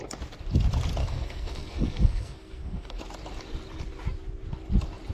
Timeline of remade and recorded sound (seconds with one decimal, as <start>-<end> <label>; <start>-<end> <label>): 0.0-1.0 recorded; 1.0-3.0 remade; 3.0-5.1 recorded